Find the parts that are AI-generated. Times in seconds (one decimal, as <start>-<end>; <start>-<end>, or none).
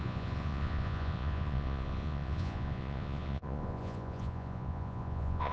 0.0-5.5